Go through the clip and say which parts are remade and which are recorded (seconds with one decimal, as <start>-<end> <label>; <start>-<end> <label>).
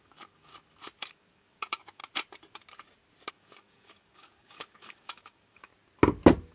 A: 0.0-0.5 remade; 0.5-1.1 recorded; 1.1-2.0 remade; 2.0-3.3 recorded; 3.3-5.7 remade; 5.7-6.5 recorded